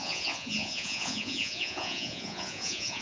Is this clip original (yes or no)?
no